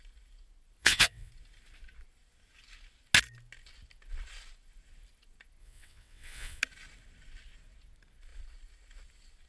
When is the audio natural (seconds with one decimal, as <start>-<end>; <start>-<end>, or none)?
0.0-0.8; 1.3-5.6; 6.6-9.5

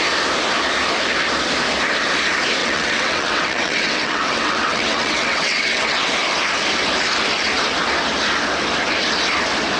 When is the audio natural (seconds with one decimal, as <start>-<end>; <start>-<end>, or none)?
0.0-2.6; 6.1-9.8